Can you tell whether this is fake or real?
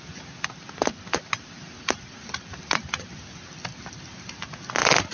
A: real